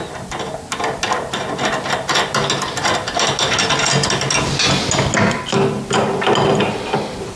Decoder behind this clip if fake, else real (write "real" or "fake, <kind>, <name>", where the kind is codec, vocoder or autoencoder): real